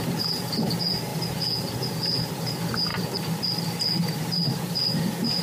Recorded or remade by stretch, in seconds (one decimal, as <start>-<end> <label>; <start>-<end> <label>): 0.0-5.4 recorded